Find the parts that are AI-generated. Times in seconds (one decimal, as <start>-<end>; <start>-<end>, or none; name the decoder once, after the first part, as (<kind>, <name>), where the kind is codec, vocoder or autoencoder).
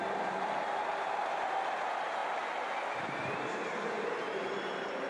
0.0-2.2 (vocoder, BigVGAN v2); 3.0-5.1